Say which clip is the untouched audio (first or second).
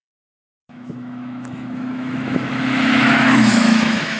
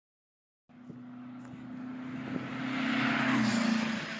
second